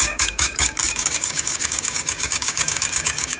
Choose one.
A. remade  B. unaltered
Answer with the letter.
A